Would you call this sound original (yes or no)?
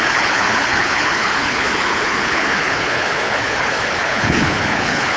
no